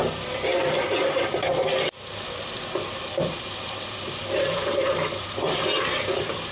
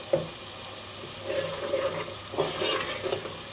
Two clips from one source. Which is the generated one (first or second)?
first